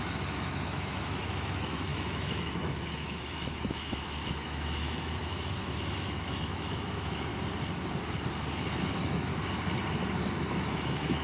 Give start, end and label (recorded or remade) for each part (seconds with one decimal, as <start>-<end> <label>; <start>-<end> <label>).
0.0-7.3 remade; 7.3-8.7 recorded; 8.7-9.3 remade; 9.3-10.5 recorded; 10.5-11.2 remade